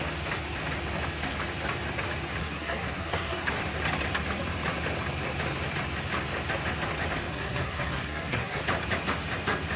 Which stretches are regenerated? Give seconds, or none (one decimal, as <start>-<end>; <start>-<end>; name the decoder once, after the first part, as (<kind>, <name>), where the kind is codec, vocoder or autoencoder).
2.4-3.6 (codec, SNAC); 7.3-8.6